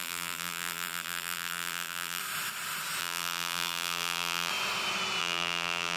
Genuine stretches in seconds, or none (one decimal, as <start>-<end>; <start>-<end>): 2.2-3.0; 4.5-5.2